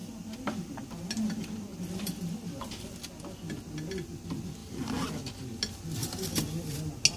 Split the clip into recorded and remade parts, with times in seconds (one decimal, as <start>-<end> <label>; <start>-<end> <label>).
0.0-0.8 remade; 0.8-1.7 recorded; 1.7-2.6 remade; 2.6-4.6 recorded; 4.6-5.1 remade; 5.1-6.0 recorded; 6.0-6.8 remade; 6.8-7.2 recorded